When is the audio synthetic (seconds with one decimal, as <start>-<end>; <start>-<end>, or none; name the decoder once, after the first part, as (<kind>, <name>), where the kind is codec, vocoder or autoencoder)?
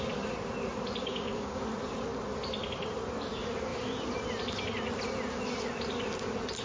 1.0-1.6 (codec, DAC)